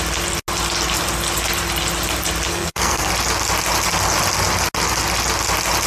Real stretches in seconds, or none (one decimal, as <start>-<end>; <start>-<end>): 0.0-2.5; 3.1-5.9